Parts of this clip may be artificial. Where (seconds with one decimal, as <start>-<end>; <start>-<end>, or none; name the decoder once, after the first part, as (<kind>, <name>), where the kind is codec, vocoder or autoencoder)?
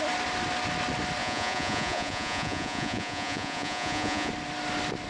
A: 1.2-4.3 (vocoder, Vocos)